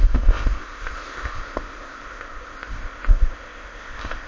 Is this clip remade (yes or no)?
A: yes